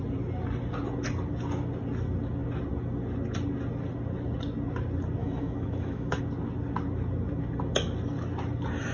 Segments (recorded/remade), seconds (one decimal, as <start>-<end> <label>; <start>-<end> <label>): 0.0-5.2 recorded; 5.2-6.2 remade; 6.2-8.9 recorded